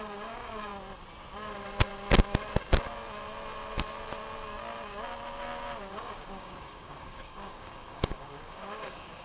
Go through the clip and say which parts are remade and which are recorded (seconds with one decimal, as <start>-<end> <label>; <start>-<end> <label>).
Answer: 0.0-0.7 remade; 0.7-5.9 recorded; 5.9-9.2 remade